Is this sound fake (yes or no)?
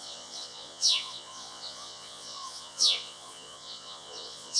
yes